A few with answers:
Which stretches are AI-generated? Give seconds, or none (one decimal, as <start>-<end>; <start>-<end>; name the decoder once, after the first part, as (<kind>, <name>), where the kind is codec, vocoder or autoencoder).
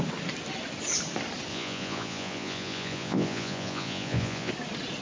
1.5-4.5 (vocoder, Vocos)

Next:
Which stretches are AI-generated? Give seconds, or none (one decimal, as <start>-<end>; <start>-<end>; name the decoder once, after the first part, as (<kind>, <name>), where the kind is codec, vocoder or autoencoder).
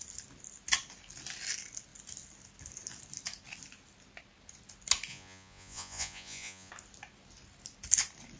5.1-6.7 (vocoder, Vocos)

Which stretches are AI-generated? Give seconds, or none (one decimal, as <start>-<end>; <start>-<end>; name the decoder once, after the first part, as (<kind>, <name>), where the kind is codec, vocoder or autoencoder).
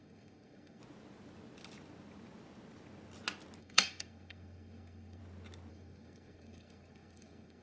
0.0-0.8 (codec, SNAC); 3.6-5.2; 5.7-7.6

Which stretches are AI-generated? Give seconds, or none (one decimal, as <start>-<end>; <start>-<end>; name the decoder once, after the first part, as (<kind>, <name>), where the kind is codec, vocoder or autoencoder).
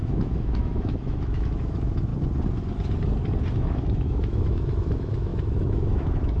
0.0-2.1 (autoencoder, DAC-VAE); 3.5-6.4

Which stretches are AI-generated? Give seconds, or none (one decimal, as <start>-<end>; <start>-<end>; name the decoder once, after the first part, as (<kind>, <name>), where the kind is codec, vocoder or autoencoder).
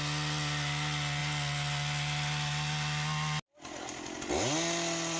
none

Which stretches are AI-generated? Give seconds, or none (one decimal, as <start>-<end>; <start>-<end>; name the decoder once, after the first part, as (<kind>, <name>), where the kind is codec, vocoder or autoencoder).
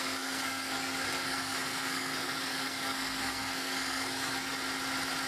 0.0-4.5 (codec, SNAC)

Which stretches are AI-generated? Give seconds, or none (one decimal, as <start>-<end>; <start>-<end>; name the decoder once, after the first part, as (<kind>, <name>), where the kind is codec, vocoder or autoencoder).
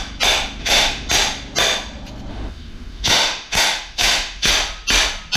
0.6-1.1 (autoencoder, DAC-VAE); 2.3-4.5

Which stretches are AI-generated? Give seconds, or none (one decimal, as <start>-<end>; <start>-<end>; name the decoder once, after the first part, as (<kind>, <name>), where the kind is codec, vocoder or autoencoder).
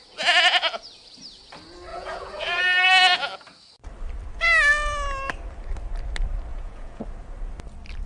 1.9-2.6 (vocoder, Vocos); 6.5-7.0